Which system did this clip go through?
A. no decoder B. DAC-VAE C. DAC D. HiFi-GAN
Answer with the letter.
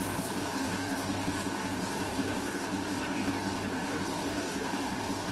C